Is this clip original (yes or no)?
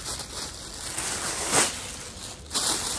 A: yes